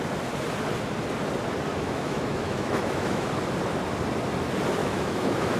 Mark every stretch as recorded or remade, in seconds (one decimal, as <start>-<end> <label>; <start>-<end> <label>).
0.0-1.7 recorded; 1.7-3.3 remade; 3.3-4.8 recorded; 4.8-5.6 remade